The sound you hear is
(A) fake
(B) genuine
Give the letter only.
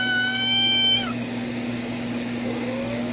A